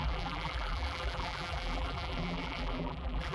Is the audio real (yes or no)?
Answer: no